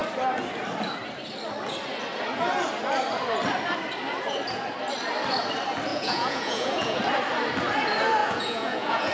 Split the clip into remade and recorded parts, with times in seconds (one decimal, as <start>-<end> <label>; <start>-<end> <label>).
0.0-5.9 recorded; 5.9-7.0 remade; 7.0-8.2 recorded; 8.2-9.1 remade